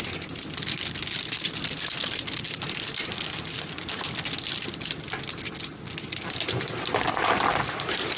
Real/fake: real